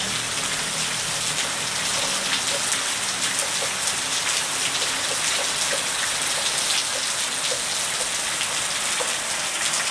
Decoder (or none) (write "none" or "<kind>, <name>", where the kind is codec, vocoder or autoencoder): none